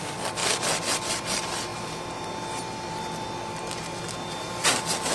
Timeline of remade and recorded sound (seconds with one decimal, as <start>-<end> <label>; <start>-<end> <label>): 0.0-5.1 recorded